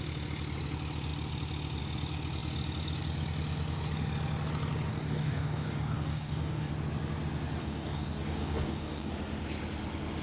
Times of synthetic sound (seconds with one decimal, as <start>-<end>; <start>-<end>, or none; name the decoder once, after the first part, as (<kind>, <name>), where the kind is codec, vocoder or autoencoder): 4.9-6.7 (codec, DAC); 7.6-9.1